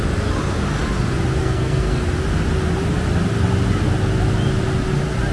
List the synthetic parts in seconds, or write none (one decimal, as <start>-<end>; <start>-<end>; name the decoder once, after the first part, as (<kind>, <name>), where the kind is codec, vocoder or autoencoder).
1.4-2.0 (codec, SNAC)